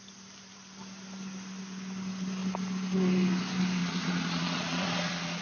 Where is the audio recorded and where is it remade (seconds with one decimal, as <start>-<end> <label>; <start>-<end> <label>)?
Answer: 0.0-3.8 recorded; 3.8-5.4 remade